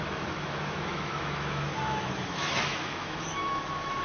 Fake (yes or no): yes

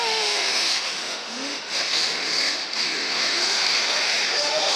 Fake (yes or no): yes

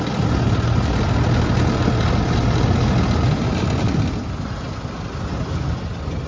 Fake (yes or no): no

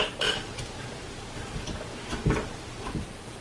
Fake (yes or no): no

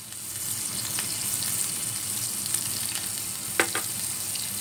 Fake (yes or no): no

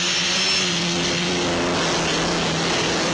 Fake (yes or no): no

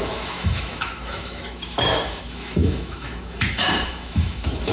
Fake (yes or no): yes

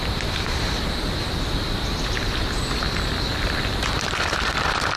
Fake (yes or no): no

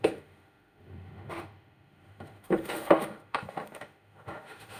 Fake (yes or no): yes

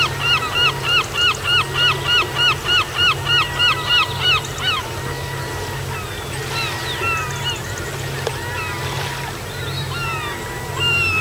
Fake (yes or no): no